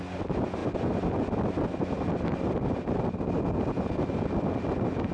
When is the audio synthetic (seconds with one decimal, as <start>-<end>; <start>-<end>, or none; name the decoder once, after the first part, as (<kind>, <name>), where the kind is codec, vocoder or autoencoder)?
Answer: none